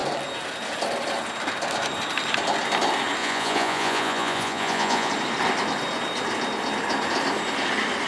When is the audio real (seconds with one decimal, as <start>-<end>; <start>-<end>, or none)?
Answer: 0.0-3.2; 5.1-8.1